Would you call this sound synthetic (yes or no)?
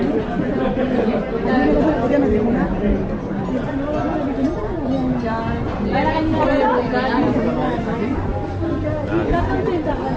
no